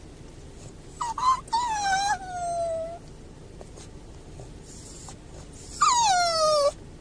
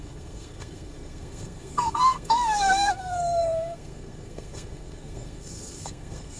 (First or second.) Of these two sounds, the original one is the first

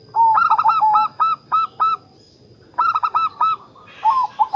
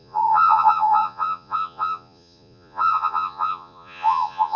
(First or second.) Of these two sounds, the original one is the first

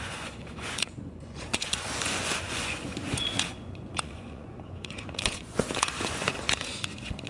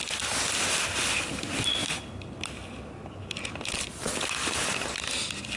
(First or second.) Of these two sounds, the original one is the second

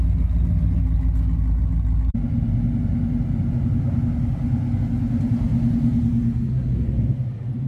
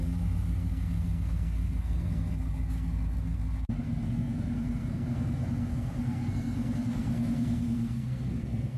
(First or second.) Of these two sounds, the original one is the first